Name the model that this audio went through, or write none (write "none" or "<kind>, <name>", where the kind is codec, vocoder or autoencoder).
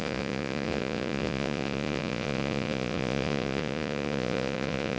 vocoder, Vocos